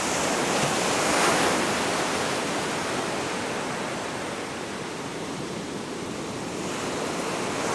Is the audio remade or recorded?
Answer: recorded